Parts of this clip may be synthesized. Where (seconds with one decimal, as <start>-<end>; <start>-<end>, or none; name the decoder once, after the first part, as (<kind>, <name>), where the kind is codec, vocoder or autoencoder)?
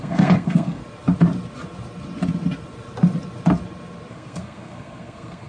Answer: 0.0-0.8 (codec, SNAC); 4.1-5.5